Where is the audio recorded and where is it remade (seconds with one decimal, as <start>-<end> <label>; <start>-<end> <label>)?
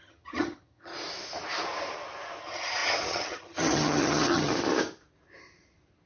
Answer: 0.0-0.9 remade; 0.9-2.4 recorded; 2.4-4.5 remade; 4.5-6.1 recorded